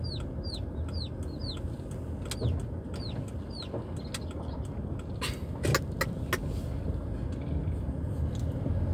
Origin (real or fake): real